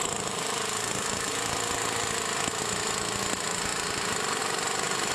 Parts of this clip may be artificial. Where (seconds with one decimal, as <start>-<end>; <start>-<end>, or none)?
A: none